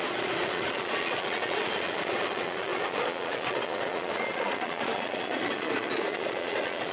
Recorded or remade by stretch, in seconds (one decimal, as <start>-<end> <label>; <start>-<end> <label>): 0.0-6.9 remade